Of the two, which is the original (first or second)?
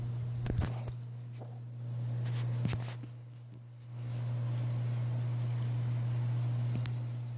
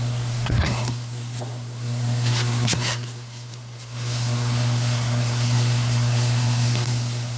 first